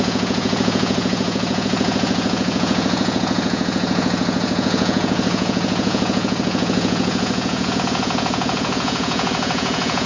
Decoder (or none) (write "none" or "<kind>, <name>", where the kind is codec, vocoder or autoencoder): vocoder, Vocos